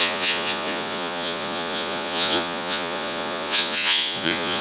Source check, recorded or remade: remade